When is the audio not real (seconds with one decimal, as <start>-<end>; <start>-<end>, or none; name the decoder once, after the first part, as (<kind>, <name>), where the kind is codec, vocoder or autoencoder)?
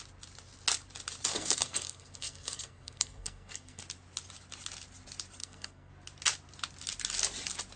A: 1.3-3.8 (codec, SNAC); 5.4-5.9